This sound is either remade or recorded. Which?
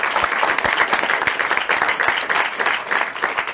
recorded